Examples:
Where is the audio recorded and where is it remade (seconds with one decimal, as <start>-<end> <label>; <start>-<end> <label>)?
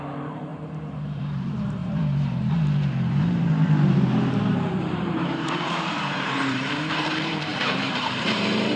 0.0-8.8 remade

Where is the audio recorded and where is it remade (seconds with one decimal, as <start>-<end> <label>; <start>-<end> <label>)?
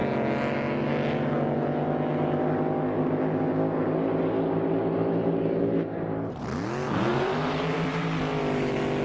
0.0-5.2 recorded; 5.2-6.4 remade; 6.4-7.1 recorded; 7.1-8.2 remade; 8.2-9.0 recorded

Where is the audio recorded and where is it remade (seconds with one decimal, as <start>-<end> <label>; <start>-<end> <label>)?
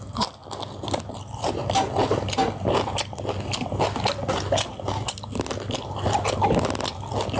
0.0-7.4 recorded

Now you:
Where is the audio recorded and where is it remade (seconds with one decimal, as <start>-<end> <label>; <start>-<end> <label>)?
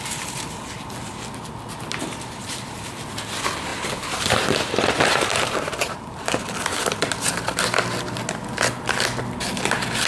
0.0-3.7 recorded; 3.7-6.4 remade; 6.4-10.1 recorded